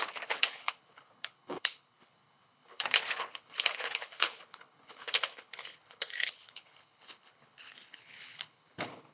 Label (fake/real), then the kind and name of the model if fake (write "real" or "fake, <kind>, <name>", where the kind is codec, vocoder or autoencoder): fake, codec, HILCodec